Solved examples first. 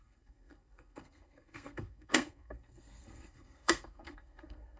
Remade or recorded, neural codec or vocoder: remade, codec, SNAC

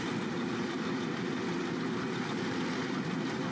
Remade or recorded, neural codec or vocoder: recorded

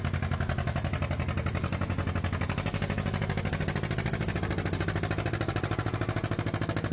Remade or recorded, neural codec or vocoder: recorded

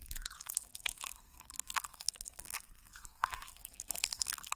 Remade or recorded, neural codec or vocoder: remade, codec, SNAC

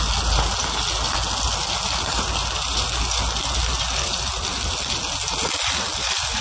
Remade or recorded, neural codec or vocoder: recorded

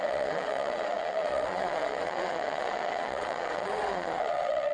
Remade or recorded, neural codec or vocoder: remade, vocoder, WaveNeXt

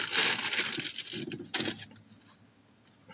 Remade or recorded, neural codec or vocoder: recorded